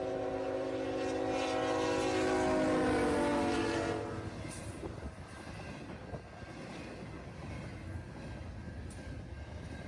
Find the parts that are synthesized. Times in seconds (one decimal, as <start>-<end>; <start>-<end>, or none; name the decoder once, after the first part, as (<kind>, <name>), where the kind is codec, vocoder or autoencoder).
none